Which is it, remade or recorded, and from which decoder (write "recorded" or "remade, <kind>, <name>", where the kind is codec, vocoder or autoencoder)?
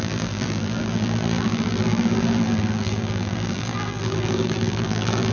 remade, vocoder, BigVGAN v2